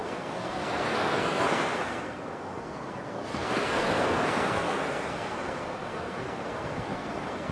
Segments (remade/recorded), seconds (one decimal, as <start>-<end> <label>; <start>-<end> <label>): 0.0-7.5 remade